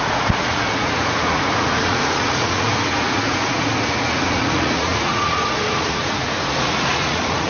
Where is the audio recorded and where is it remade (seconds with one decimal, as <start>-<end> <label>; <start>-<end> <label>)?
0.0-7.5 remade